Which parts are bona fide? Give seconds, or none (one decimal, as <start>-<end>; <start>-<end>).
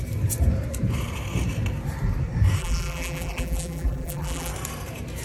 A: 0.0-2.6; 4.5-5.2